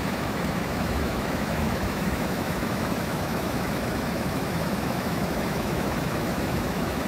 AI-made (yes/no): yes